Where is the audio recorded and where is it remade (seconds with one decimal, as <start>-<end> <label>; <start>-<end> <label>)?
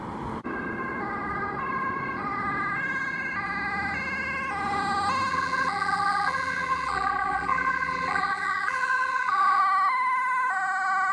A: 0.0-5.3 recorded; 5.3-9.6 remade; 9.6-11.1 recorded